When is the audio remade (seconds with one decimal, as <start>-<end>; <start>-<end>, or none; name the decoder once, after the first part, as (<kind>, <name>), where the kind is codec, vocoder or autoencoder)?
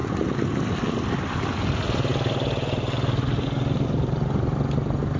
none